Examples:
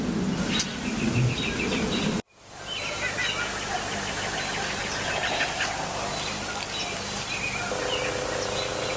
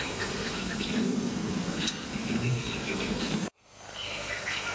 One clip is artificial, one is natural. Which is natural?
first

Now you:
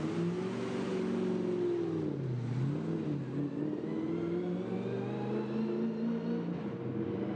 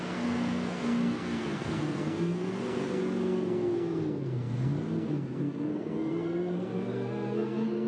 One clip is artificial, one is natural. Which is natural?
first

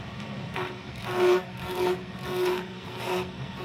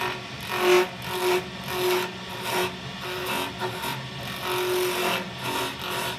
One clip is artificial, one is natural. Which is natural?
second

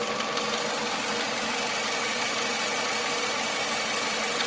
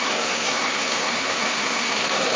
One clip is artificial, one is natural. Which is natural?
first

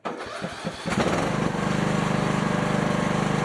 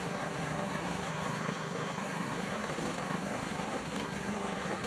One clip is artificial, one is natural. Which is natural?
first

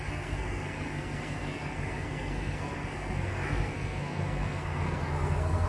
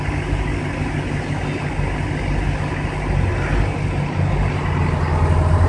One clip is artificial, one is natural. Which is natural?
second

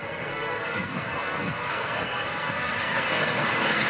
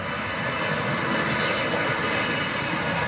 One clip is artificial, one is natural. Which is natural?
second